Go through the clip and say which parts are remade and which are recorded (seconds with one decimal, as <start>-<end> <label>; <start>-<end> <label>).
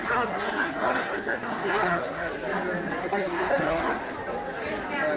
0.0-2.3 remade; 2.3-3.0 recorded; 3.0-4.0 remade; 4.0-5.2 recorded